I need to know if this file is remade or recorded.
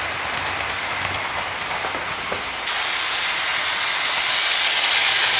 recorded